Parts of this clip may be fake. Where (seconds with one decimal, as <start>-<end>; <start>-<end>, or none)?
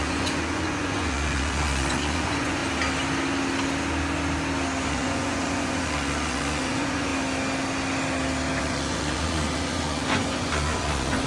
0.0-2.6; 4.9-7.1; 8.6-11.3